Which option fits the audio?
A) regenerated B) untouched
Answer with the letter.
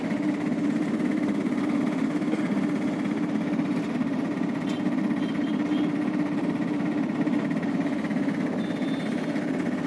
A